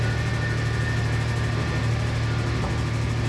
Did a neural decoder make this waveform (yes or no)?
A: no